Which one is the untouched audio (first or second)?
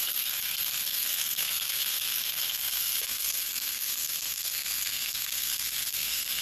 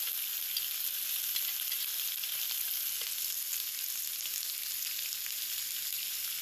second